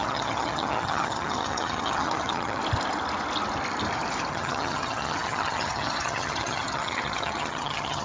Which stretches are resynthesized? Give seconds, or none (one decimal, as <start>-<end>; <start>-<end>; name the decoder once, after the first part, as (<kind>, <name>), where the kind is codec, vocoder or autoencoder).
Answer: 0.0-2.6 (vocoder, HiFi-GAN); 4.3-8.0